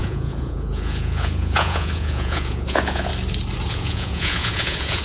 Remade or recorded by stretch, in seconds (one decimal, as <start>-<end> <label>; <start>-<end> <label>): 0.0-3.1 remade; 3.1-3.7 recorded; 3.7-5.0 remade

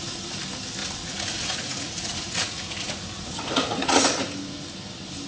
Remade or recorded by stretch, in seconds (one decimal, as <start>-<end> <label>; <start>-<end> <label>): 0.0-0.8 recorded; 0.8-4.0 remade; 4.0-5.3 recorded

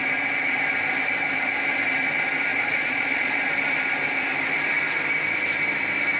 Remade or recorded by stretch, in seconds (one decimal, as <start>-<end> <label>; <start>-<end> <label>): 0.0-2.5 recorded; 2.5-3.5 remade; 3.5-6.2 recorded